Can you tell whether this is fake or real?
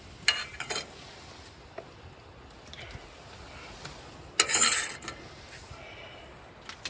real